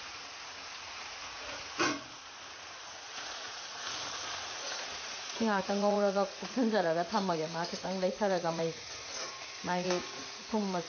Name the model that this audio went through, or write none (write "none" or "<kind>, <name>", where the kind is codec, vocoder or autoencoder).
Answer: vocoder, Vocos